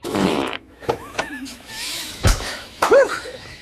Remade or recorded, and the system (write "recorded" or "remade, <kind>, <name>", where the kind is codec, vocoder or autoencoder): remade, autoencoder, DAC-VAE